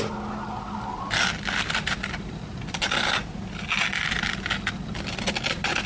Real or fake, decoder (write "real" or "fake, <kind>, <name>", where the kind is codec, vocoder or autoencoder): real